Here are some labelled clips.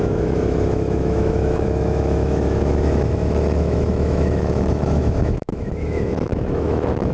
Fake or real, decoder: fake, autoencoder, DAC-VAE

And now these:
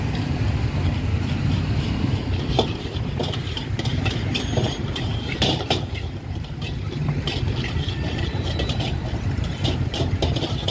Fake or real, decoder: fake, vocoder, BigVGAN v2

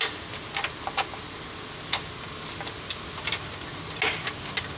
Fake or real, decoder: real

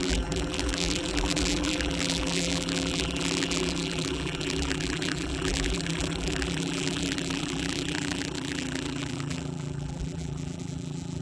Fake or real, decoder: fake, vocoder, BigVGAN v2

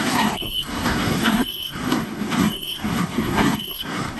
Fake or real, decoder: fake, codec, SNAC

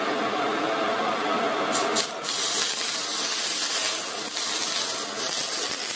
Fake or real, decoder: real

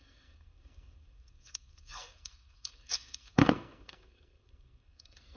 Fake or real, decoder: fake, codec, SNAC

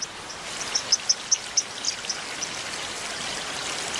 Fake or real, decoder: real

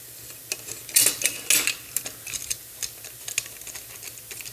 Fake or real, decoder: real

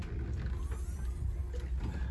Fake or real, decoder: real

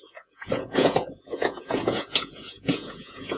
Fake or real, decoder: fake, vocoder, Vocos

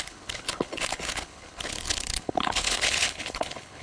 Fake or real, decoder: fake, codec, HILCodec